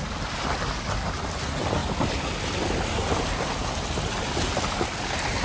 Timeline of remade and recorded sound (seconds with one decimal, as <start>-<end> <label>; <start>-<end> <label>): 0.0-5.4 recorded